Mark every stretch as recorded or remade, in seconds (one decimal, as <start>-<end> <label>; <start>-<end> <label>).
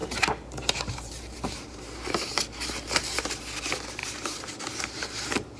0.0-3.4 remade; 3.4-4.0 recorded; 4.0-5.6 remade